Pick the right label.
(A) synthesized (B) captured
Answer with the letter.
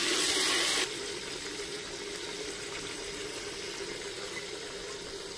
B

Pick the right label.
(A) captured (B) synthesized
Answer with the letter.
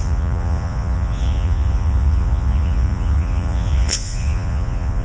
B